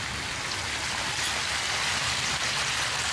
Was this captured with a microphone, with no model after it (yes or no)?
yes